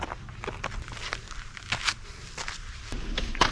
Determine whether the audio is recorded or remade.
recorded